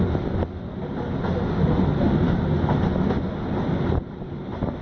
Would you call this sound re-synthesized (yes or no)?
no